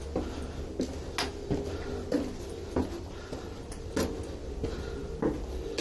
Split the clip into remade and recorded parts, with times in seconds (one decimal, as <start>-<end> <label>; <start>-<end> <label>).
0.0-2.8 recorded; 2.8-3.9 remade; 3.9-5.8 recorded